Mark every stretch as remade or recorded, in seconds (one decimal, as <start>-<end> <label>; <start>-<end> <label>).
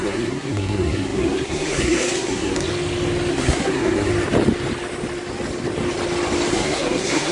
0.0-2.7 remade; 2.7-3.3 recorded; 3.3-4.1 remade; 4.1-6.5 recorded; 6.5-7.3 remade